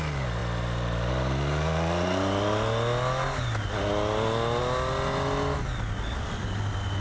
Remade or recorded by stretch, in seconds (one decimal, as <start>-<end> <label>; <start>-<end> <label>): 0.0-7.0 recorded